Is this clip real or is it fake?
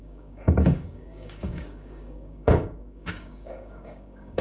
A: fake